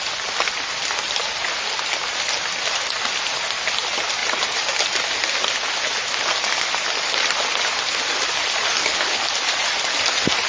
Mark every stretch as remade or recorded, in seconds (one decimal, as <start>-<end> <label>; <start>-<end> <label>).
0.0-8.8 recorded; 8.8-9.3 remade; 9.3-10.5 recorded